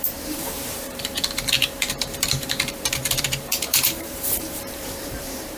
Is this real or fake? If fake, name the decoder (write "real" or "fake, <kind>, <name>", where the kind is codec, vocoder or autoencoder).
fake, vocoder, BigVGAN v2